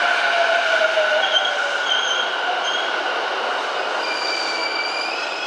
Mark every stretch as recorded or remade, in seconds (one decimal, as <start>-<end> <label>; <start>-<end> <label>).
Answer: 0.0-3.3 remade; 3.3-4.7 recorded; 4.7-5.5 remade